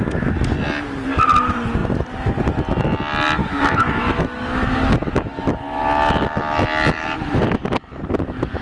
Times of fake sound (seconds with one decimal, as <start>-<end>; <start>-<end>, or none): 3.4-5.8